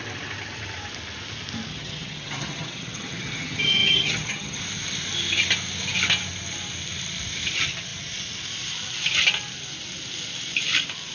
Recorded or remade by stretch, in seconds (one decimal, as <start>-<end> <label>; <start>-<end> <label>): 0.0-1.7 recorded; 1.7-4.6 remade; 4.6-11.1 recorded